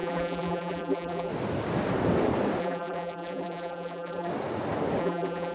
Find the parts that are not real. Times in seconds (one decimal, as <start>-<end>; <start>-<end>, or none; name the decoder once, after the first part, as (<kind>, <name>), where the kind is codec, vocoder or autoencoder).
0.0-1.3 (vocoder, BigVGAN v2); 2.6-4.3; 5.0-5.5